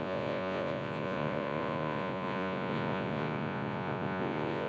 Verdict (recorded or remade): remade